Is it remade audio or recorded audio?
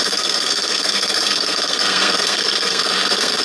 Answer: remade